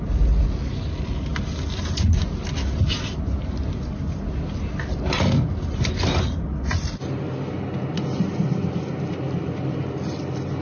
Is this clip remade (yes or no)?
no